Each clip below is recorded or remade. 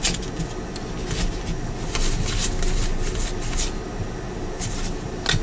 recorded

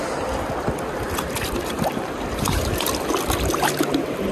recorded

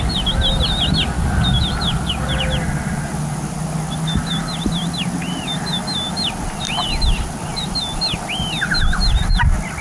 recorded